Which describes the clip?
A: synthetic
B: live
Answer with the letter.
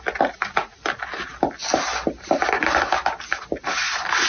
B